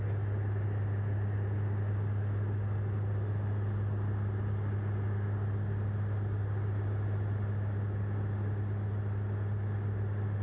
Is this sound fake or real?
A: real